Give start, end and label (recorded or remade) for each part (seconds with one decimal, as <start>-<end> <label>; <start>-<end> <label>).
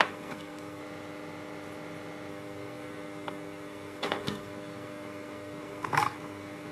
0.0-0.8 remade; 0.8-2.3 recorded; 2.3-6.7 remade